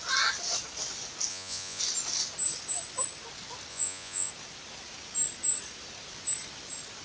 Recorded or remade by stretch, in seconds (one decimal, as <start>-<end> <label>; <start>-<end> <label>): 0.0-1.3 recorded; 1.3-1.8 remade; 1.8-3.7 recorded; 3.7-4.3 remade; 4.3-7.0 recorded